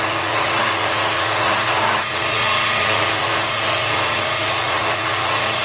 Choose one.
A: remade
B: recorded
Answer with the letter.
A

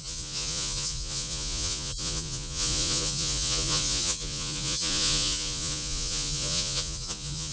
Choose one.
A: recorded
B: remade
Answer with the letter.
B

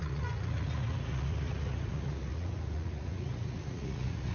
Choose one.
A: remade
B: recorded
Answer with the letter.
A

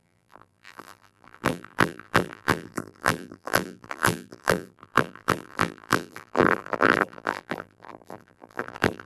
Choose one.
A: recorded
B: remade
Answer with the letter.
B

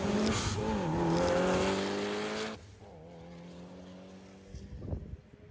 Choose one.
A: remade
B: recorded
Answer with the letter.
B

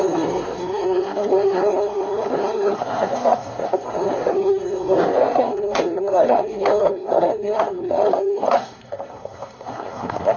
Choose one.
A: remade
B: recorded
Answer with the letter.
A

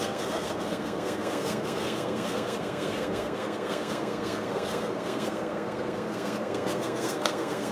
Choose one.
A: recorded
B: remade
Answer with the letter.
B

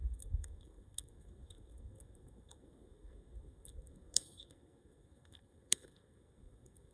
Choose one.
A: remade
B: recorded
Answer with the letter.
A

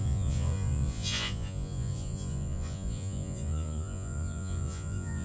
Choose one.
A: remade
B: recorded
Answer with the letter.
A